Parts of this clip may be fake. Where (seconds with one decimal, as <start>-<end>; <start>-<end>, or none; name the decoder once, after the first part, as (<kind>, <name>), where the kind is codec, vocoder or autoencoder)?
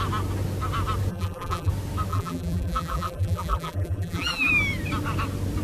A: 1.1-1.7 (vocoder, BigVGAN v2); 2.1-4.5